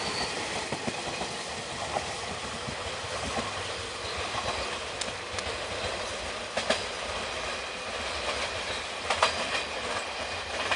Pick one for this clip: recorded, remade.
recorded